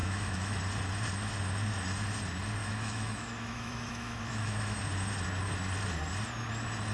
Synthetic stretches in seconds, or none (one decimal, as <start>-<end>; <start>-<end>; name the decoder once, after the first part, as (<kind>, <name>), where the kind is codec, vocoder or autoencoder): 0.0-0.6 (autoencoder, DAC-VAE); 2.6-4.8